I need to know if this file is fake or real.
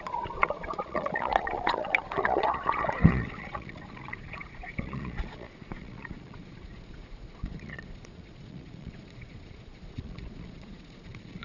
fake